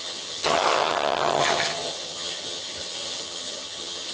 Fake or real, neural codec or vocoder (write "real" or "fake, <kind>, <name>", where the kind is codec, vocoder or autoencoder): fake, vocoder, HiFi-GAN